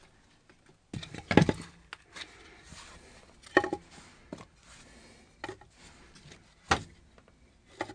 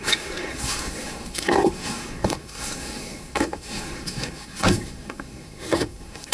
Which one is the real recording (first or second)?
first